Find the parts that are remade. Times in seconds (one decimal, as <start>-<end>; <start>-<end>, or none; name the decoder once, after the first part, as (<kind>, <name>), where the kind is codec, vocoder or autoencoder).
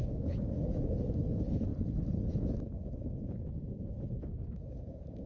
0.0-1.7 (autoencoder, DAC-VAE); 2.3-5.3